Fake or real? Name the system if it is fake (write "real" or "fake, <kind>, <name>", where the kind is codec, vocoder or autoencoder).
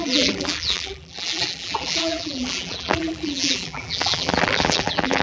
fake, vocoder, BigVGAN v2